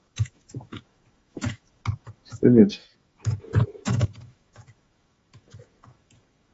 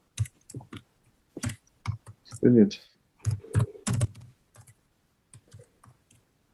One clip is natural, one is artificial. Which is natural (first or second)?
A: second